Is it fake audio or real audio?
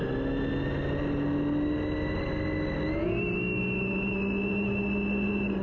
real